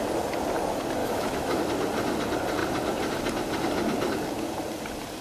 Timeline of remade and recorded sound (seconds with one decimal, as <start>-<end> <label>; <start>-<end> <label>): 0.0-1.0 recorded; 1.0-1.6 remade; 1.6-5.2 recorded